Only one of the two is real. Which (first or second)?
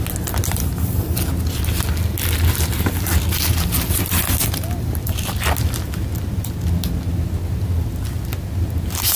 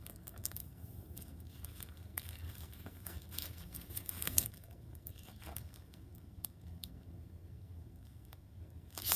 first